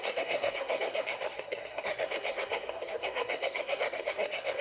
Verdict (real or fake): fake